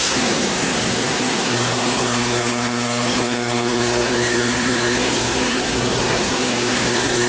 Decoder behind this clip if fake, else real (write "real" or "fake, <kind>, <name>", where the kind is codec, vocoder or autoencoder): fake, codec, SNAC